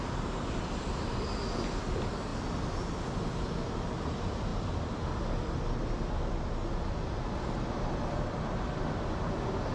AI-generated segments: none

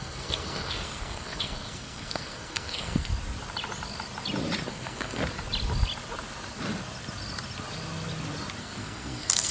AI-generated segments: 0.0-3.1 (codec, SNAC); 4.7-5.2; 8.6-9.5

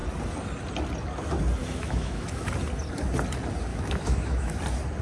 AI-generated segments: 1.6-2.5 (autoencoder, DAC-VAE); 3.7-4.6

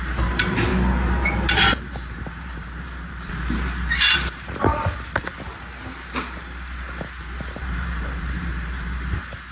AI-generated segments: 0.0-0.7 (vocoder, BigVGAN v2); 1.7-4.7; 7.2-9.5

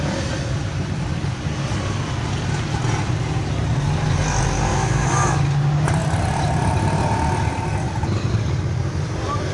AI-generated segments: 4.7-5.4 (autoencoder, DAC-VAE)

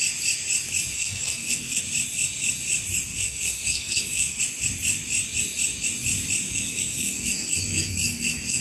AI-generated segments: 0.9-1.8 (codec, SNAC); 3.1-4.4; 6.5-8.6

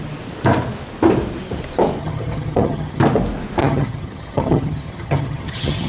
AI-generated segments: 2.0-3.0 (vocoder, HiFi-GAN); 3.6-5.9

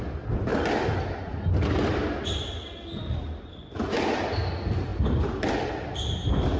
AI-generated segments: 4.9-6.6 (vocoder, BigVGAN v2)